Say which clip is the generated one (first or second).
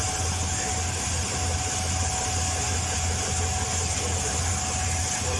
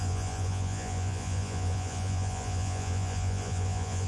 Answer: second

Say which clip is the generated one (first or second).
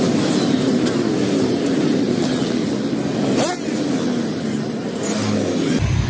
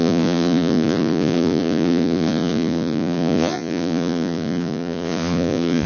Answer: second